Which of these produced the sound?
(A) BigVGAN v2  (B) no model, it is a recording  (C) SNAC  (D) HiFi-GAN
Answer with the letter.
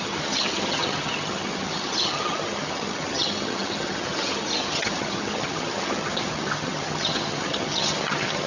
D